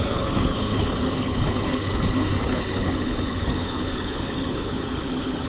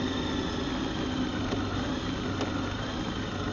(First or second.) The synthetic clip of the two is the first